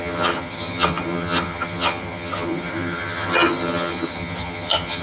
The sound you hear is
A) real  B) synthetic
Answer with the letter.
B